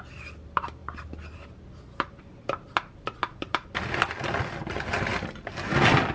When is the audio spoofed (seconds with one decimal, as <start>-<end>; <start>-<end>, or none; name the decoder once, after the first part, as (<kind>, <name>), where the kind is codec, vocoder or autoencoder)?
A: none